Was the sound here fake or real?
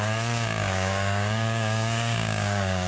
fake